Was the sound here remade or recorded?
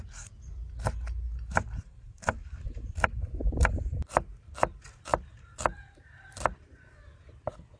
recorded